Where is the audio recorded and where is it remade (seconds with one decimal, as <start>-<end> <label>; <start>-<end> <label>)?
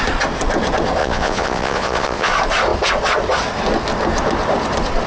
0.0-1.0 recorded; 1.0-2.3 remade; 2.3-5.1 recorded